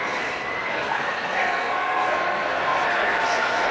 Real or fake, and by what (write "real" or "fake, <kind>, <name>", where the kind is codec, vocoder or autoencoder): fake, codec, SNAC